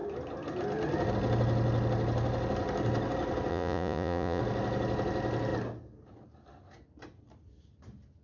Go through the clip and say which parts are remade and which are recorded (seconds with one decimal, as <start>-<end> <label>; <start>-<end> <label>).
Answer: 0.0-3.5 recorded; 3.5-4.4 remade; 4.4-8.2 recorded